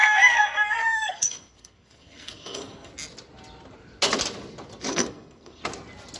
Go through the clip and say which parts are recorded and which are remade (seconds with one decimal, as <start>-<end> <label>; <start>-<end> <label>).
0.0-2.9 remade; 2.9-4.9 recorded; 4.9-5.6 remade; 5.6-6.2 recorded